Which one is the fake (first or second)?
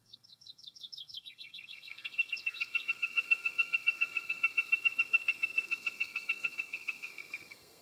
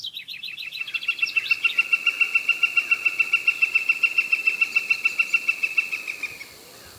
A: first